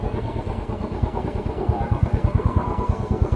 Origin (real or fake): fake